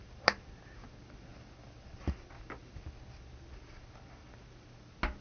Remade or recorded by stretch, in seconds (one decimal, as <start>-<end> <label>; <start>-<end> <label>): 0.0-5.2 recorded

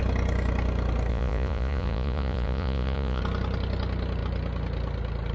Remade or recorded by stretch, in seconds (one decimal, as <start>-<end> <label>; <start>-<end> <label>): 0.0-1.1 recorded; 1.1-3.2 remade; 3.2-5.3 recorded

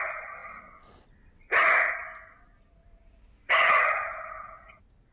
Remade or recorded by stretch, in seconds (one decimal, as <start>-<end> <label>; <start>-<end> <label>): 0.0-5.1 recorded